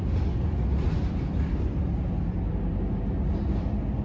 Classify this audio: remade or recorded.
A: recorded